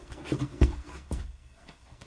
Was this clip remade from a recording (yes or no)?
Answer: yes